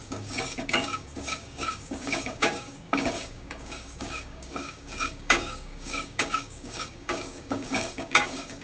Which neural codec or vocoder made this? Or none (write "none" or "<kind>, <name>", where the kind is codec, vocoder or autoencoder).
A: codec, DAC